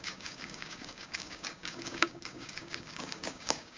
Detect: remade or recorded remade